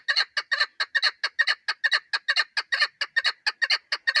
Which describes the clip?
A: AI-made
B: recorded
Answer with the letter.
B